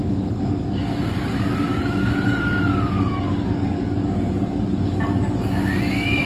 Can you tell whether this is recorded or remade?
remade